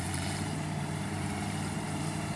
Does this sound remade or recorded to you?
remade